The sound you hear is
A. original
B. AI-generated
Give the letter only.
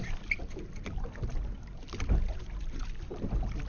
A